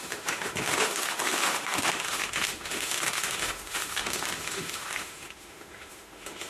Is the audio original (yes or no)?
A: no